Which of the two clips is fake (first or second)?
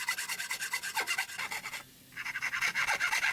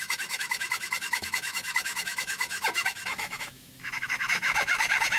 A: second